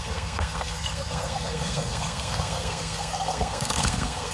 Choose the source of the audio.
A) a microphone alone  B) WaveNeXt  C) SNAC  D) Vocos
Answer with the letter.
C